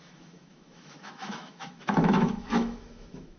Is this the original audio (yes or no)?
no